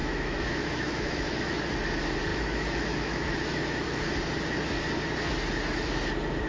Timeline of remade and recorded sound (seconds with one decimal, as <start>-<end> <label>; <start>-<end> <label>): 0.0-1.6 remade; 1.6-2.3 recorded; 2.3-4.0 remade; 4.0-6.5 recorded